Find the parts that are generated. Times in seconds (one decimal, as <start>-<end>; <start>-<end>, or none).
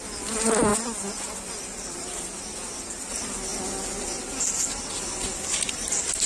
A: none